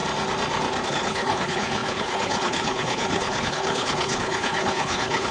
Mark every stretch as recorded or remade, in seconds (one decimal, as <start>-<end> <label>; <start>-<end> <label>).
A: 0.0-0.9 recorded; 0.9-5.3 remade